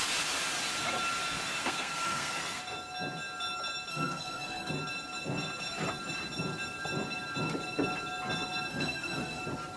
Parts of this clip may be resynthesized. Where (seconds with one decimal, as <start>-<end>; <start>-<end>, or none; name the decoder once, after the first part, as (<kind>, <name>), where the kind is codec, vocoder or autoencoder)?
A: 1.6-2.6 (codec, SNAC); 3.9-4.7; 8.7-9.4